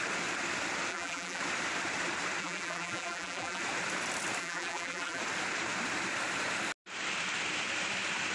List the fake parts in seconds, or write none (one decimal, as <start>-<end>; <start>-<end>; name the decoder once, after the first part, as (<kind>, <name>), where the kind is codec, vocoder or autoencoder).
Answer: 0.9-1.4 (vocoder, BigVGAN v2); 2.4-3.6; 4.4-5.2